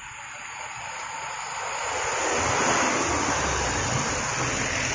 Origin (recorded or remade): recorded